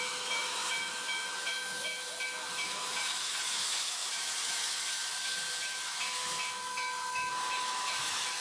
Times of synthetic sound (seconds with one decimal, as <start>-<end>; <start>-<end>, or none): 0.0-8.4